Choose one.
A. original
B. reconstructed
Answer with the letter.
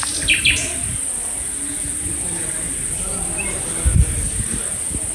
A